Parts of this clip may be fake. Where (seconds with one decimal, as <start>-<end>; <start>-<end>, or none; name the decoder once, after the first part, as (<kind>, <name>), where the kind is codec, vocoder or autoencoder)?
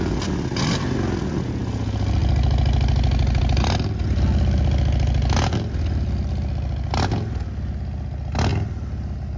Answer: none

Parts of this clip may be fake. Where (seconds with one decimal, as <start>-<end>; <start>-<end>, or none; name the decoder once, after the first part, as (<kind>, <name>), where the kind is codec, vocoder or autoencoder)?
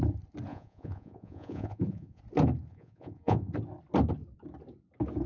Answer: 0.5-2.2 (vocoder, Vocos); 2.7-3.5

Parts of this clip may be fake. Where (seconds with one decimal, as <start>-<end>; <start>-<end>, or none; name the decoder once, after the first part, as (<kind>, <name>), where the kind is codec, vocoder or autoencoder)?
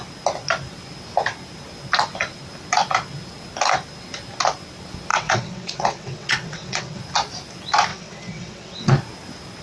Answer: 5.1-7.0 (vocoder, WaveNeXt); 7.9-8.9